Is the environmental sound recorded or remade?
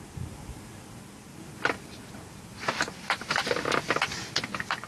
recorded